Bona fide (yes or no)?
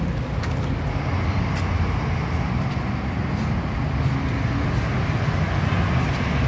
yes